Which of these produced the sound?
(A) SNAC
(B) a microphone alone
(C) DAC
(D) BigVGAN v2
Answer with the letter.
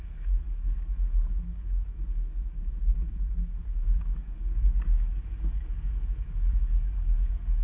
C